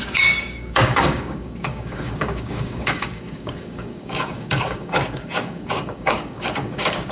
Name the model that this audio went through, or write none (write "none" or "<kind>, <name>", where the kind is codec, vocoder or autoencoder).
codec, DAC